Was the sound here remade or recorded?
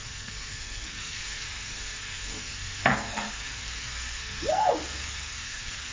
remade